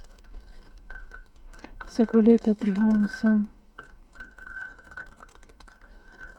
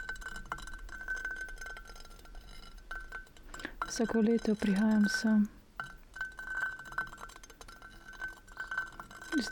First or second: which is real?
second